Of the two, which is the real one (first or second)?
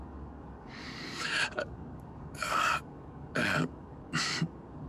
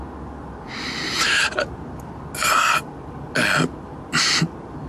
second